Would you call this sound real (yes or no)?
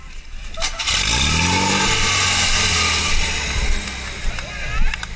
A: yes